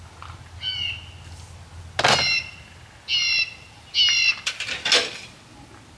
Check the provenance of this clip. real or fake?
real